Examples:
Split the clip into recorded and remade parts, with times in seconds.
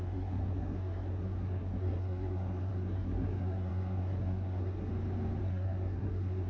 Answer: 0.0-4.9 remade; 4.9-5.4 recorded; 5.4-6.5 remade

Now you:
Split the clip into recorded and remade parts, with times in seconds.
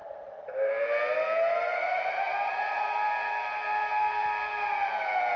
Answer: 0.0-0.7 remade; 0.7-1.7 recorded; 1.7-4.9 remade; 4.9-5.4 recorded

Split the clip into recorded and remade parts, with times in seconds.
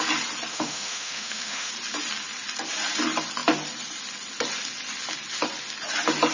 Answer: 0.0-0.5 recorded; 0.5-1.7 remade; 1.7-6.3 recorded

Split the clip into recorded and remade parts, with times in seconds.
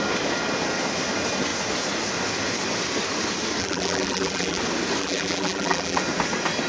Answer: 0.0-3.6 recorded; 3.6-4.6 remade; 4.6-5.0 recorded; 5.0-6.0 remade; 6.0-6.7 recorded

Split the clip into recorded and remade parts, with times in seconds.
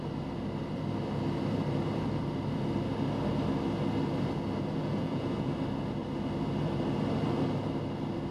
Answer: 0.0-4.8 recorded; 4.8-5.5 remade; 5.5-8.3 recorded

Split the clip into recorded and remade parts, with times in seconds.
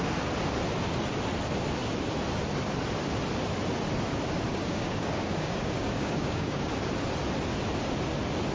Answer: 0.0-4.5 recorded; 4.5-6.7 remade; 6.7-8.5 recorded